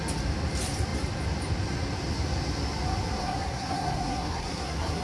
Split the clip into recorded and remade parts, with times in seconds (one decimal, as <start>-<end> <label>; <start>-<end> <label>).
0.0-3.2 recorded; 3.2-5.0 remade